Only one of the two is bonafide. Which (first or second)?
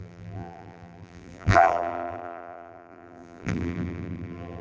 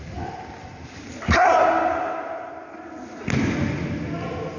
second